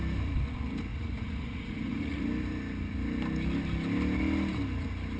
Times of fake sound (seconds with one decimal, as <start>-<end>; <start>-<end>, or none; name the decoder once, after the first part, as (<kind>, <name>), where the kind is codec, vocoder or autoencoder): 0.9-2.2 (vocoder, Vocos)